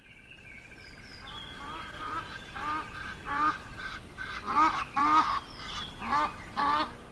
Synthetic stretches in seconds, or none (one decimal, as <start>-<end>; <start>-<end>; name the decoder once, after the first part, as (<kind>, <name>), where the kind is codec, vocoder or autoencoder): none